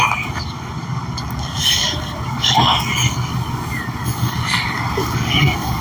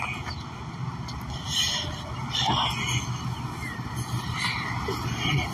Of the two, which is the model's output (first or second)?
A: first